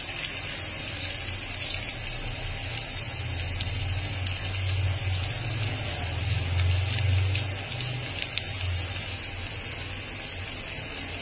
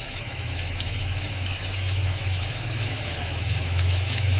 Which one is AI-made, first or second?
second